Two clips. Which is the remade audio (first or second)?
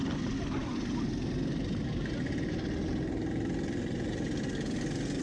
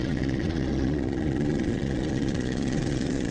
second